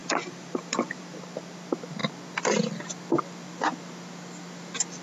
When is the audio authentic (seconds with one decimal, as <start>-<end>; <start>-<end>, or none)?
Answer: 1.2-5.0